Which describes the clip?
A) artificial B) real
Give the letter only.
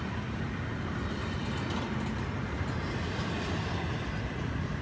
B